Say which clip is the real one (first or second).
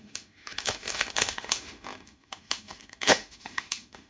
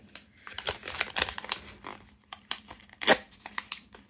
second